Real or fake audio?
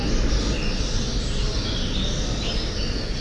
real